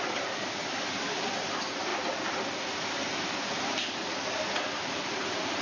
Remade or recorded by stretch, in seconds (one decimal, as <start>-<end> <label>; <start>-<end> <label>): 0.0-1.9 remade; 1.9-5.6 recorded